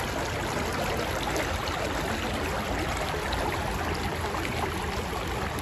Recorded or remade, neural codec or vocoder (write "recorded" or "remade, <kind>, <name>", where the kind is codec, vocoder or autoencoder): recorded